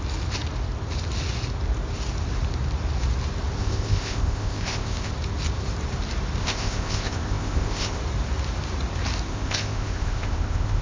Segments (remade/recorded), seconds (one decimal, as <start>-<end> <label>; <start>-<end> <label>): 0.0-3.6 recorded; 3.6-5.1 remade; 5.1-6.4 recorded; 6.4-8.0 remade; 8.0-9.3 recorded; 9.3-10.8 remade